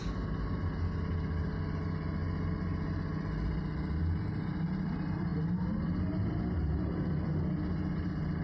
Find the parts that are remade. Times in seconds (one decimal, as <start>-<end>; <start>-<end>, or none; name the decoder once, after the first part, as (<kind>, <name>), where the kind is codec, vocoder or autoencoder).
none